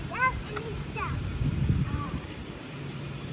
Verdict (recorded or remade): remade